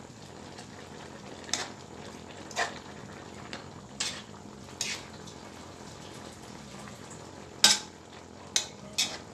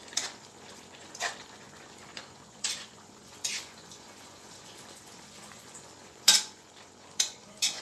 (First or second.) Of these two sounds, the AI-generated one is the second